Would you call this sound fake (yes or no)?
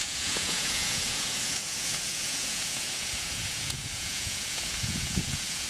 yes